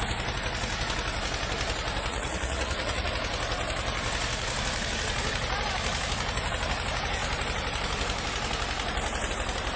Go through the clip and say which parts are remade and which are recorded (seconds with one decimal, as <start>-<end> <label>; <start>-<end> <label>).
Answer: 0.0-2.1 recorded; 2.1-3.1 remade; 3.1-9.8 recorded